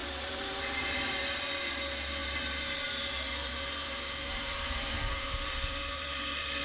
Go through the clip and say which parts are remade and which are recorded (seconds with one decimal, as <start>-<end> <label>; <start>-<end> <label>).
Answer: 0.0-1.4 remade; 1.4-2.2 recorded; 2.2-6.6 remade